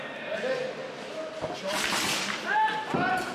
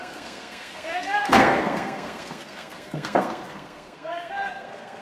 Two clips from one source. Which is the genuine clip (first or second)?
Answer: first